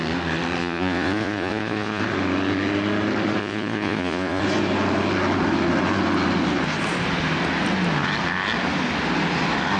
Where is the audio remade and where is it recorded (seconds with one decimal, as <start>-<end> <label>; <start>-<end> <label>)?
0.0-0.6 recorded; 0.6-2.0 remade; 2.0-3.4 recorded; 3.4-4.4 remade; 4.4-9.8 recorded